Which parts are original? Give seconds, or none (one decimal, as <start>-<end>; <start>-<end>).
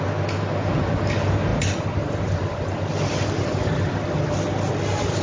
0.0-5.2